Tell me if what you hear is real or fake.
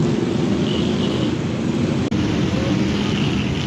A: real